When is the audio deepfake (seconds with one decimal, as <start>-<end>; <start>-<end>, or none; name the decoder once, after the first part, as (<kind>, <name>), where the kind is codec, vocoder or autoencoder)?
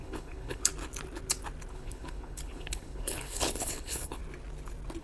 0.0-0.7 (codec, HILCodec); 1.7-4.2